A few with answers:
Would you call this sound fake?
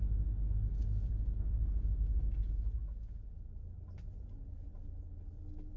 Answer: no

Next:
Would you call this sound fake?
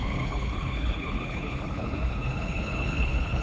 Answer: yes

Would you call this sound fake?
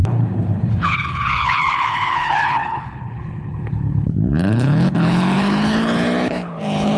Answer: yes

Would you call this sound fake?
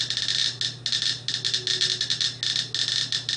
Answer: no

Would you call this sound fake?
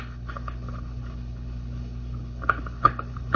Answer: yes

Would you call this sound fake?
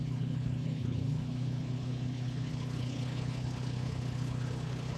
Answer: yes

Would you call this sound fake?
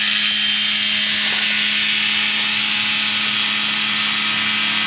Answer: no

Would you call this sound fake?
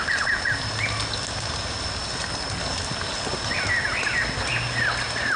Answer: no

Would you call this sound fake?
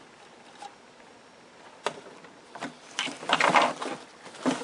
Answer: no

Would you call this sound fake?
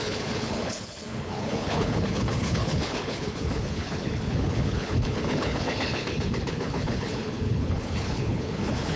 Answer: yes